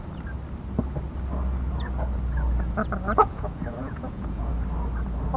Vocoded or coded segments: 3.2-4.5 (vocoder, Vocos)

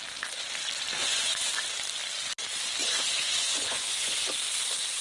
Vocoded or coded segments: 1.0-1.5 (vocoder, Vocos); 2.8-4.3

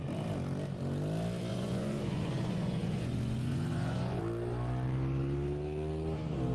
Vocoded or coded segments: 1.5-4.2 (vocoder, Vocos)

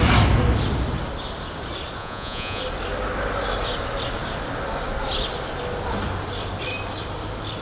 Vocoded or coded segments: 2.0-2.6 (vocoder, Vocos)

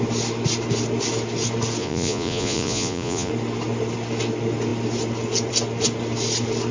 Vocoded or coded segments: 1.8-3.3 (vocoder, Vocos)

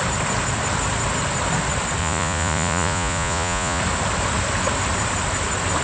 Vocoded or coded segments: 2.0-3.8 (vocoder, Vocos)